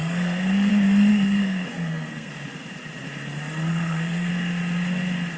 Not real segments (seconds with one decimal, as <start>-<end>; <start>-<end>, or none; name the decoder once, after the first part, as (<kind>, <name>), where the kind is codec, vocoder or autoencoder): 0.0-0.7 (codec, SNAC); 1.1-2.3; 3.7-4.3